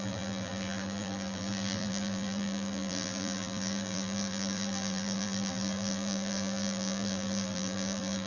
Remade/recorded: remade